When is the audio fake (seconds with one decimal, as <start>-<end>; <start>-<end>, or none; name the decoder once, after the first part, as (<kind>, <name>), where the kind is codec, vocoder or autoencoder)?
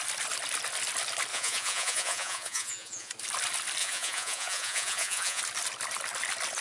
1.3-3.1 (vocoder, Vocos); 3.8-5.4